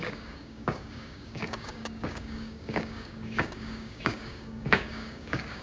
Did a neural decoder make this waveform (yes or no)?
yes